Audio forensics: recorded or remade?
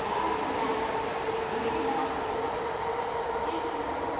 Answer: recorded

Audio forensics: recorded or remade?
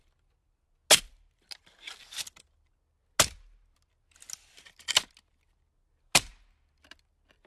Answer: recorded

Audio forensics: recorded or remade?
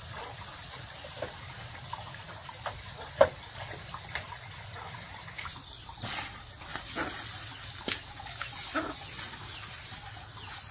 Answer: recorded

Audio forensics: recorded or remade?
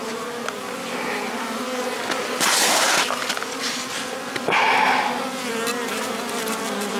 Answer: recorded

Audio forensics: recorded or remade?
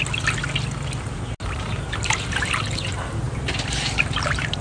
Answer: recorded